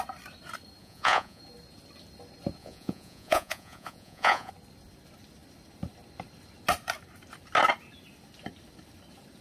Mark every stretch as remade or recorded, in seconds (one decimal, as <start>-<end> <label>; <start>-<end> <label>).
0.0-0.8 recorded; 0.8-1.4 remade; 1.4-2.6 recorded; 2.6-4.5 remade; 4.5-9.4 recorded